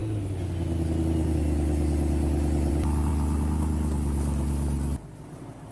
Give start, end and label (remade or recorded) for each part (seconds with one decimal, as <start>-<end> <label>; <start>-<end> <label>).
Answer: 0.0-5.7 recorded